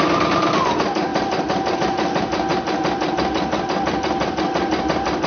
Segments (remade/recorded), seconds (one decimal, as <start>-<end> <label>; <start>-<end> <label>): 0.0-5.3 recorded